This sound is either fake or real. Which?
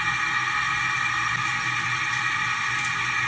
real